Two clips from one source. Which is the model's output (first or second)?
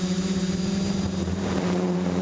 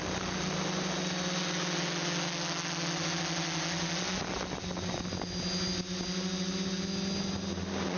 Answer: first